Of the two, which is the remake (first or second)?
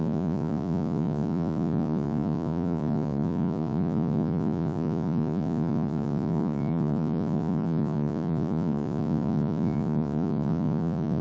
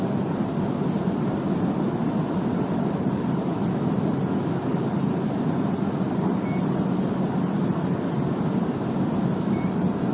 first